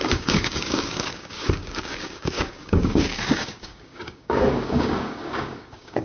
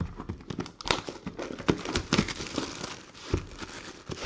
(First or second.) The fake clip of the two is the first